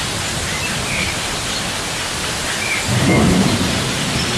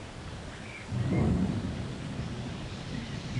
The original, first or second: first